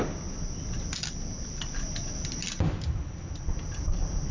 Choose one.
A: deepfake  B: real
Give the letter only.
B